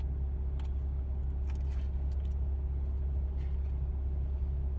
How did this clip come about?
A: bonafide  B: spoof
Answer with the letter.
A